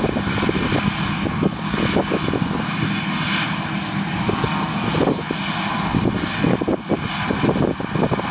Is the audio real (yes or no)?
yes